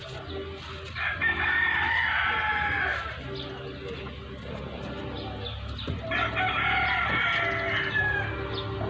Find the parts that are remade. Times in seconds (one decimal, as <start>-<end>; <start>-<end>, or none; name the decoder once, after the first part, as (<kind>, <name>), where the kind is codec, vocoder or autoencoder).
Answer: none